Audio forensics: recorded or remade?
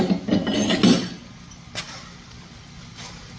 recorded